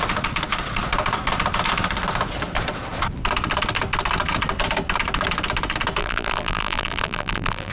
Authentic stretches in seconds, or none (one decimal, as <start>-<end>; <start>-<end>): 0.0-6.0